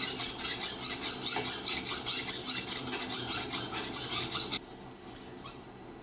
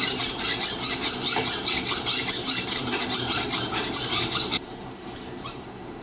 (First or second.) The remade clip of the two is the second